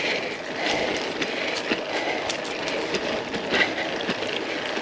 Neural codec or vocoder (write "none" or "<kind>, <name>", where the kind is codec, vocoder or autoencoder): none